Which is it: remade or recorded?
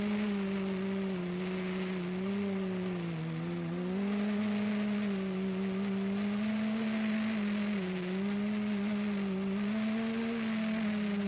recorded